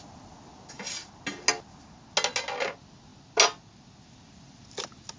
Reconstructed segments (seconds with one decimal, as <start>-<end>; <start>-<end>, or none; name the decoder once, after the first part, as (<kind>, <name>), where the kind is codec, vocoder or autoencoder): none